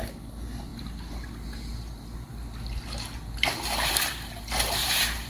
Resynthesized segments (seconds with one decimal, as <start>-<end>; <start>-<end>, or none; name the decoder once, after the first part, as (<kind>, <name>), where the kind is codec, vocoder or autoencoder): 4.8-5.3 (vocoder, Vocos)